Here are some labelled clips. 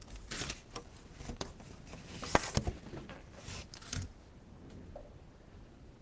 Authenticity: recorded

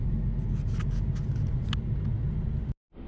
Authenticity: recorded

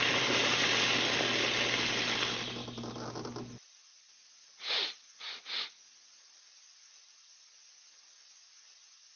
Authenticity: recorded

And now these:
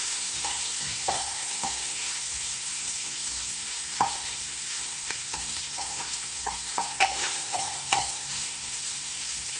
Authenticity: remade